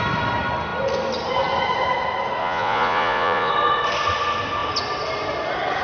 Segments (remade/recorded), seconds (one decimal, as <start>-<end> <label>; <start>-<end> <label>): 0.0-2.4 recorded; 2.4-3.5 remade; 3.5-5.8 recorded